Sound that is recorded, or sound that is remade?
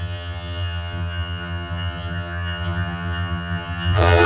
remade